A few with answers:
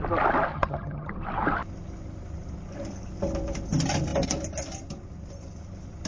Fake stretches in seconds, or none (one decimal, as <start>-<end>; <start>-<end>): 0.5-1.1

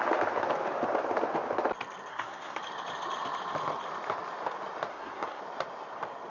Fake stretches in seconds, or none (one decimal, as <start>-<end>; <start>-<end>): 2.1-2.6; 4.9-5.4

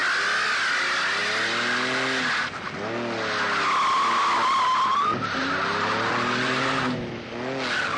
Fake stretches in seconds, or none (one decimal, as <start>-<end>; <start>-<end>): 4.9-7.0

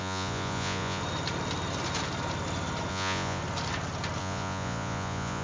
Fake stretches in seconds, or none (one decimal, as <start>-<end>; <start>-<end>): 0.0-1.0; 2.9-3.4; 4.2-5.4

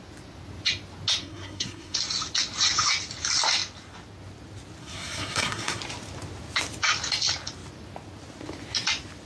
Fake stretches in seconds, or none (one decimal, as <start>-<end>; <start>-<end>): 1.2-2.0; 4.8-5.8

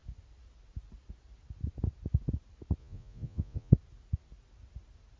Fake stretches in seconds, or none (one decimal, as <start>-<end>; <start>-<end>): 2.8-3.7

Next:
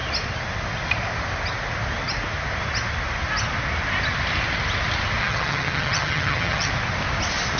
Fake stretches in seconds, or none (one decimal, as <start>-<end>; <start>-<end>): 5.2-6.7